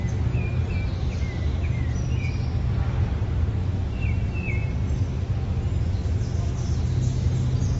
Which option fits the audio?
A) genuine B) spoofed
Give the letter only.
A